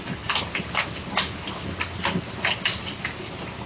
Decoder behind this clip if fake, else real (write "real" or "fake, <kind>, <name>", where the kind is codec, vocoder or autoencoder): real